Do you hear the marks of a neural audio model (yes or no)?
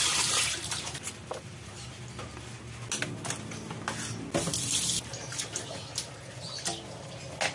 no